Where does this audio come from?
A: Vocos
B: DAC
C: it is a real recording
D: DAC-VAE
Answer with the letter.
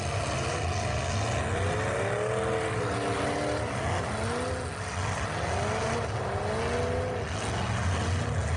C